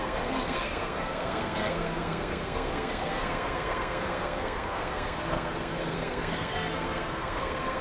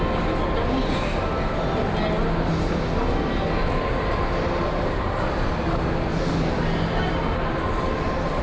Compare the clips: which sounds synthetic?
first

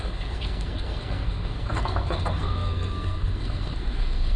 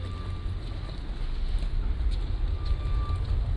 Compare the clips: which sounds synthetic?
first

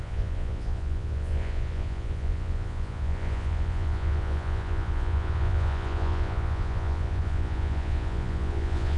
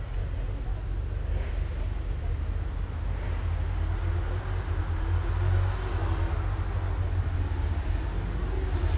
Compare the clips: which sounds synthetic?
first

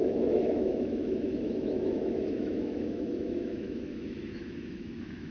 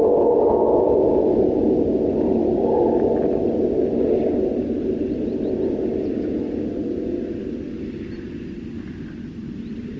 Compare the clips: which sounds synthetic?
first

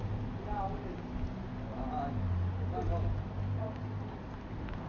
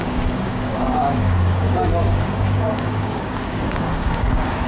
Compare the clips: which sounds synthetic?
second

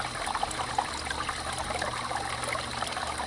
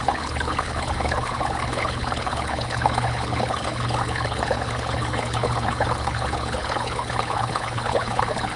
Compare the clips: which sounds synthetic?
second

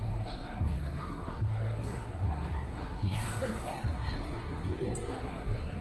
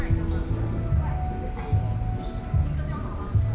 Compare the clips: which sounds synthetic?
first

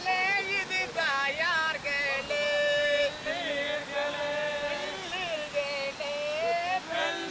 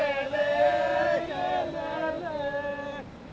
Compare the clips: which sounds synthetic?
second